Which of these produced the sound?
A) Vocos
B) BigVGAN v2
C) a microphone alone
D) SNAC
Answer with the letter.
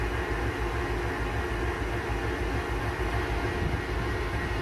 C